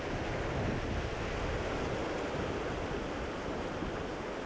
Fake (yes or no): no